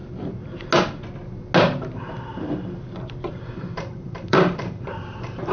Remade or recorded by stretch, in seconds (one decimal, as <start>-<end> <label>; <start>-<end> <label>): 0.0-3.3 recorded; 3.3-5.5 remade